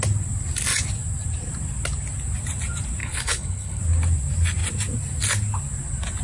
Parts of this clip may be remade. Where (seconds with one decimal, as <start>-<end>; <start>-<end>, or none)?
3.0-3.8